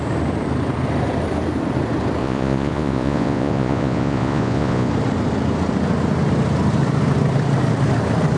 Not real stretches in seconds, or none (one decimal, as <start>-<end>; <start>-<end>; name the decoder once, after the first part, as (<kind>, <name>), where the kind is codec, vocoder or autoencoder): 2.2-4.9 (vocoder, Vocos)